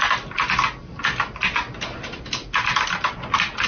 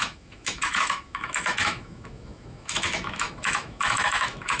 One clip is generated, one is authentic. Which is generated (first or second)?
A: second